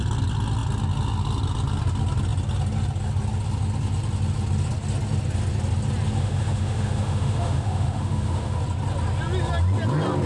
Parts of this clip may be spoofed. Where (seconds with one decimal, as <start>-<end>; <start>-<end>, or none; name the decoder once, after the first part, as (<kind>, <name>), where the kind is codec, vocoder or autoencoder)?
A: 6.2-8.6 (autoencoder, DAC-VAE)